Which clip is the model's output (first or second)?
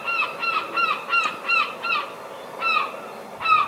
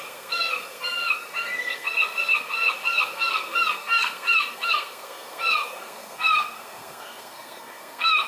second